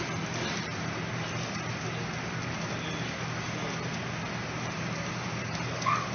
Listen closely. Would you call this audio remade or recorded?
recorded